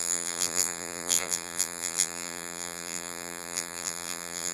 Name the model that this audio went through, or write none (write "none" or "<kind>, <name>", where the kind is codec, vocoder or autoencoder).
vocoder, BigVGAN v2